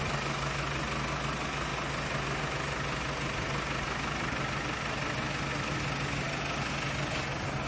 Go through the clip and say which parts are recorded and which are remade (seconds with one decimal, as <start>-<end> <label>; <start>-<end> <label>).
0.0-7.7 recorded